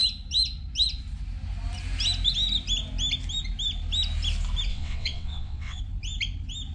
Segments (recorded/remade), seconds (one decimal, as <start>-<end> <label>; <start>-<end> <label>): 0.0-4.7 recorded; 4.7-5.8 remade; 5.8-6.7 recorded